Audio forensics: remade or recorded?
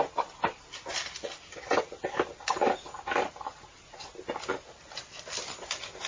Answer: recorded